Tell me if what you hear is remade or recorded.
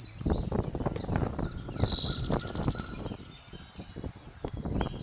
recorded